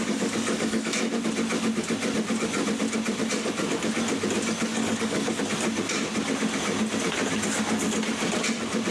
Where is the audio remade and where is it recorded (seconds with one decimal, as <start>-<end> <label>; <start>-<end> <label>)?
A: 0.0-0.9 remade; 0.9-4.7 recorded; 4.7-5.4 remade; 5.4-8.9 recorded